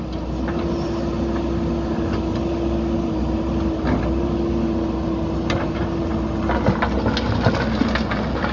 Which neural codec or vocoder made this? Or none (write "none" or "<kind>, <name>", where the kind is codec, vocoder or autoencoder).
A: none